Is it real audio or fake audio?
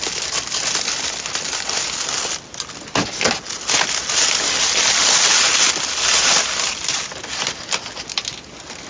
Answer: real